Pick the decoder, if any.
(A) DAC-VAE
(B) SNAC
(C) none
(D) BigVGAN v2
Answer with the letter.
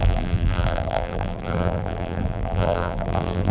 D